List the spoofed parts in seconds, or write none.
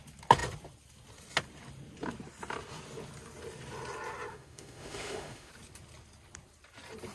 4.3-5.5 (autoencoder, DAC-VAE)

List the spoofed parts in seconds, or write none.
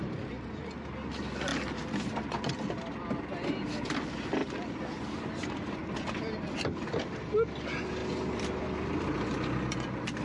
4.4-7.0 (vocoder, BigVGAN v2); 8.0-8.6